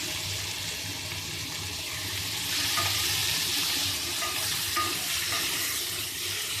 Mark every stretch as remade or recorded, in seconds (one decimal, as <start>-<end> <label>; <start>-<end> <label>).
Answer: 0.0-3.2 recorded; 3.2-5.8 remade; 5.8-6.6 recorded